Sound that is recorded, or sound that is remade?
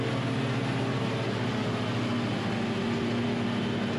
recorded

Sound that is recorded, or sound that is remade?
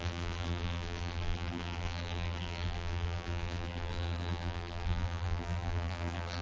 remade